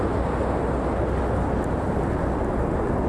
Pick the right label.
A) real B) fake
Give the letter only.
A